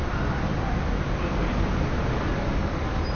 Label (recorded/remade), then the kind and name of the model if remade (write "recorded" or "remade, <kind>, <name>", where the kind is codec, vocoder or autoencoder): recorded